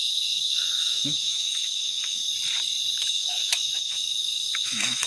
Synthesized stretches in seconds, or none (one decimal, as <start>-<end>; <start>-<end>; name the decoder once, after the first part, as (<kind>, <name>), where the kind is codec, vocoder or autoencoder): 0.0-2.2 (autoencoder, DAC-VAE); 3.0-5.1